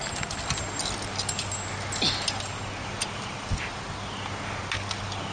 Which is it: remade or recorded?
recorded